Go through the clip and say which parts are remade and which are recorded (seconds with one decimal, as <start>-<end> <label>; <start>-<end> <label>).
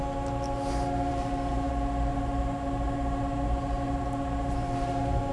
0.0-1.1 recorded; 1.1-1.7 remade; 1.7-2.1 recorded; 2.1-5.3 remade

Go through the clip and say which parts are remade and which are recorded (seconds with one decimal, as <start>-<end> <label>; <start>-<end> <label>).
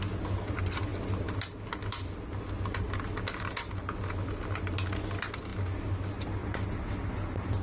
0.0-7.6 recorded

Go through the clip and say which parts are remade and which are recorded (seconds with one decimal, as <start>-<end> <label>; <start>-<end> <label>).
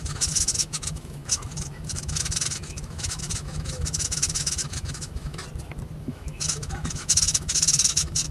0.0-5.4 remade; 5.4-6.0 recorded; 6.0-8.3 remade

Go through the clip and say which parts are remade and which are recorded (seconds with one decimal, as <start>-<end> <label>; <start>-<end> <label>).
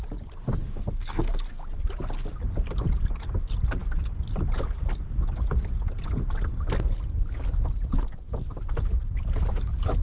0.0-0.6 recorded; 0.6-1.3 remade; 1.3-10.0 recorded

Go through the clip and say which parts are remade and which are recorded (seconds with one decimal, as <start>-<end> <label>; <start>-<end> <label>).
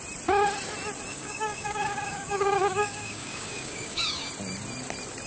0.0-1.1 recorded; 1.1-4.3 remade; 4.3-5.3 recorded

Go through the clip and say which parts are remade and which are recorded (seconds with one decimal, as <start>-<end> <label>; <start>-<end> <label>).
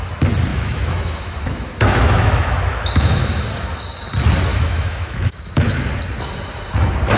0.0-0.5 recorded; 0.5-3.8 remade; 3.8-4.5 recorded; 4.5-5.9 remade; 5.9-7.2 recorded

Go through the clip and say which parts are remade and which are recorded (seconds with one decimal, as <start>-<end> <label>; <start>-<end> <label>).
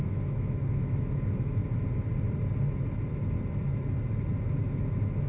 0.0-1.6 remade; 1.6-4.6 recorded; 4.6-5.3 remade